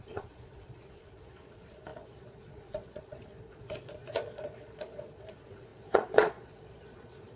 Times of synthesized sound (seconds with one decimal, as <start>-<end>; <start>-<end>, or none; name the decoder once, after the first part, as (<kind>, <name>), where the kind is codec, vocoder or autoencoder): 0.0-7.4 (vocoder, Vocos)